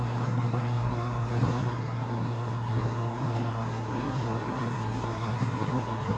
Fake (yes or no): yes